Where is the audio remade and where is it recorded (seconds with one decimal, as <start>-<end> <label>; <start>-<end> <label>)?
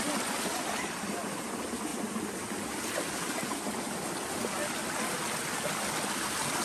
0.0-6.6 recorded